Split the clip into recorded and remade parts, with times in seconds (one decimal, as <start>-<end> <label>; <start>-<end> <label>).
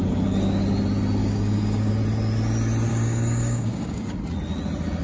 0.0-1.2 recorded; 1.2-1.9 remade; 1.9-2.9 recorded; 2.9-4.2 remade; 4.2-5.0 recorded